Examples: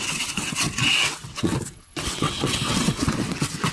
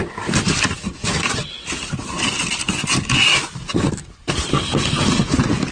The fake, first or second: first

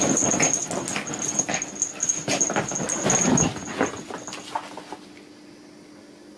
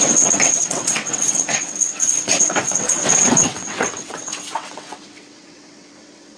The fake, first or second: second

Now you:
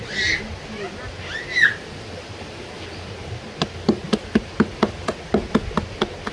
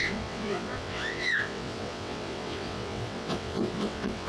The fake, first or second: second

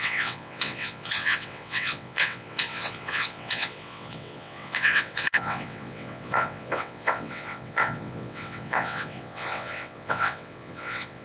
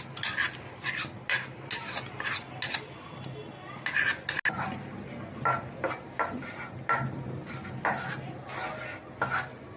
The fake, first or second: first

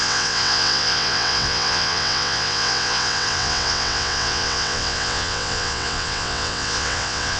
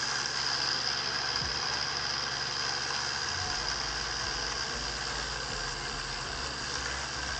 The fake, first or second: first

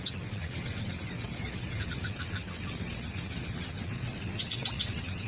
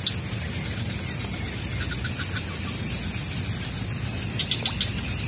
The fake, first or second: first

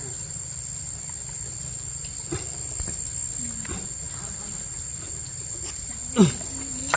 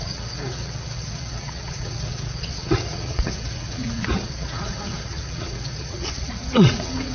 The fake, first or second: second